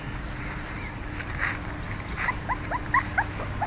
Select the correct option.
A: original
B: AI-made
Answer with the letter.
A